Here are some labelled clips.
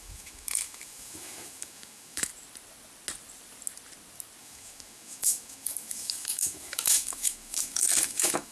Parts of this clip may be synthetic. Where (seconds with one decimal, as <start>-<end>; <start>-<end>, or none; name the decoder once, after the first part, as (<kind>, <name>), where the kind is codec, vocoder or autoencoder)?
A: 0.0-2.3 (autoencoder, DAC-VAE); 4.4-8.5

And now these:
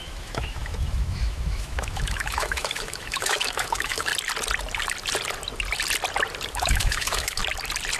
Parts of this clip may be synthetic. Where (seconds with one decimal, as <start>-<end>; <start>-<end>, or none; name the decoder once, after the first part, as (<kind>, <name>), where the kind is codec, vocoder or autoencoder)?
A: 0.0-4.1 (autoencoder, DAC-VAE); 6.5-7.4

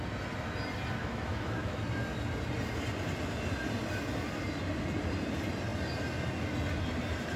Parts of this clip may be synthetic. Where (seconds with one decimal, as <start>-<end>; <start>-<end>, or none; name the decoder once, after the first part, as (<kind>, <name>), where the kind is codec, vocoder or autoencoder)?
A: 1.0-1.8 (autoencoder, DAC-VAE)

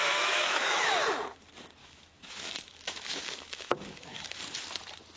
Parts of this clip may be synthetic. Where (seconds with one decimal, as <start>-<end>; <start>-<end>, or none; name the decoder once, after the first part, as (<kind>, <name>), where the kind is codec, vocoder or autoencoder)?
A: 0.0-0.9 (autoencoder, DAC-VAE); 1.8-4.4

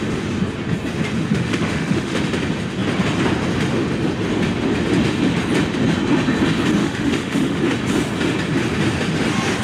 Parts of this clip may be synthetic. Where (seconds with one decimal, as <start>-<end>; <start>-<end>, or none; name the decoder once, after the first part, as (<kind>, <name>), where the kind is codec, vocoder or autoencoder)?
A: 1.3-2.2 (autoencoder, DAC-VAE); 6.8-7.6